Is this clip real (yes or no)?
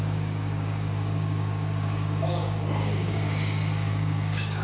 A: no